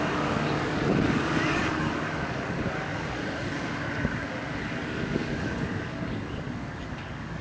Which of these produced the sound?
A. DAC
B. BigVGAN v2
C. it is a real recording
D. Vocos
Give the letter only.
A